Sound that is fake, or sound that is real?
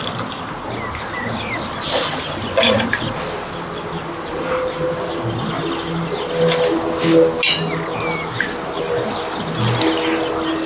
real